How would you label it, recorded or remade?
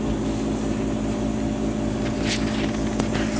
recorded